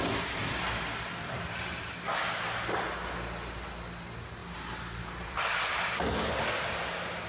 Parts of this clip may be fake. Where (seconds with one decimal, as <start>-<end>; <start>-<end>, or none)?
0.4-2.1; 4.4-6.3